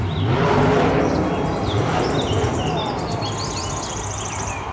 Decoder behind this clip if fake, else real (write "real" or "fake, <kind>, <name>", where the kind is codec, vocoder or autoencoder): fake, vocoder, BigVGAN v2